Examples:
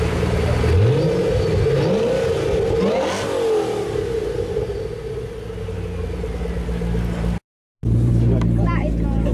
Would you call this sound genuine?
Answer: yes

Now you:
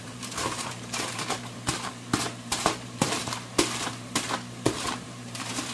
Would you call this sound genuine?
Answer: no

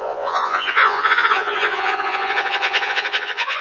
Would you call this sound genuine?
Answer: no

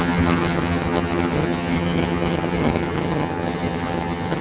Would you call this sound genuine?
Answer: no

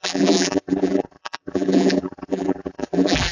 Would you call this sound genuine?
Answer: no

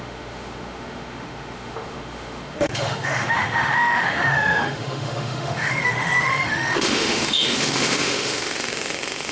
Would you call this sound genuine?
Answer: no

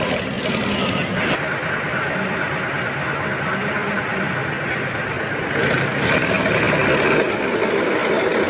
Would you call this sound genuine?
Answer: yes